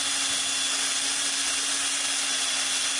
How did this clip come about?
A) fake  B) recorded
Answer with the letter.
B